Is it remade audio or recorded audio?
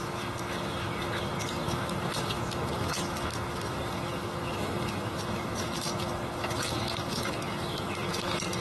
remade